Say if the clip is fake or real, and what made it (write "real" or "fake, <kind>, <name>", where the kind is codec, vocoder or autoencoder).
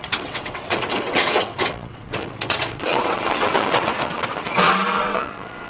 fake, vocoder, WaveNeXt